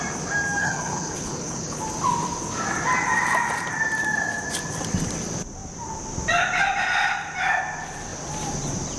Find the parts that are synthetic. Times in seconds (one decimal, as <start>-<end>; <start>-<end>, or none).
0.6-1.8

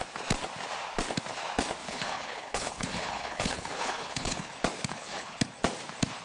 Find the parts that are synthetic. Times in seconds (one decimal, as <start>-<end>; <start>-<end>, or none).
1.8-4.5; 4.9-5.4

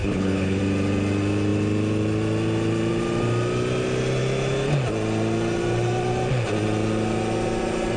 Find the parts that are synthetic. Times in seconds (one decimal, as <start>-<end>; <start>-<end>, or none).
0.0-0.6

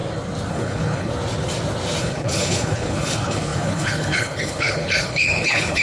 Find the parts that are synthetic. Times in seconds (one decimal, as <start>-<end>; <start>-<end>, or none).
0.5-1.1; 2.0-5.8

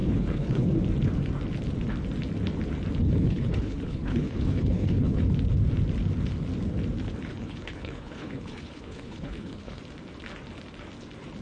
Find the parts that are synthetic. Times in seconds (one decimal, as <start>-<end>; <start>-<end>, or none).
0.0-0.7; 3.0-5.2; 7.3-9.8

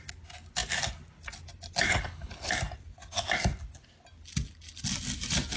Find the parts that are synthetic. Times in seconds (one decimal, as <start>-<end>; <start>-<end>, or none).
1.9-2.5

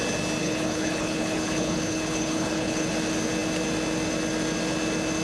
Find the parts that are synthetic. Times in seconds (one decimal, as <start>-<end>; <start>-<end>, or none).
0.4-2.9

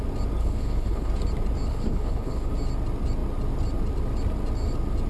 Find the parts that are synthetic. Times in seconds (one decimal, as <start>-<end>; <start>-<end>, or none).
0.4-1.1; 1.7-2.5